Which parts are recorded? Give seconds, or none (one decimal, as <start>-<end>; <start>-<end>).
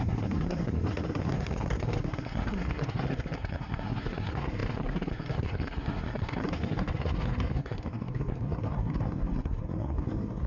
none